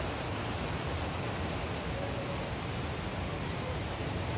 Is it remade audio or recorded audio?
recorded